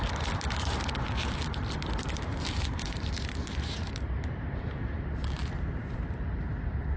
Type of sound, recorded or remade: remade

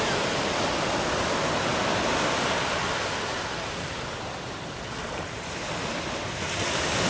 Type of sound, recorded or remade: recorded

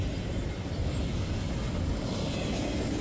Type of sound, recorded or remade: recorded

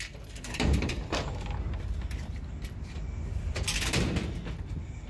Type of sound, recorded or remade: remade